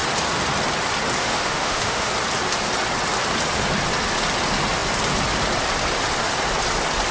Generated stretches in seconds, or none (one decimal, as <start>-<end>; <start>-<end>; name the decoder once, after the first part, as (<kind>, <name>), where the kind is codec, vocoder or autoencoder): 1.2-2.1 (autoencoder, DAC-VAE)